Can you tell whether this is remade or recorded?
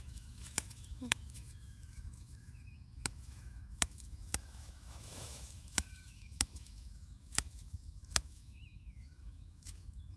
remade